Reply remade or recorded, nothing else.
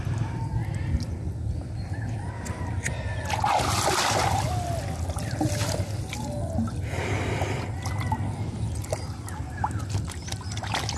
recorded